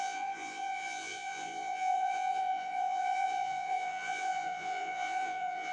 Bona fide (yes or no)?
no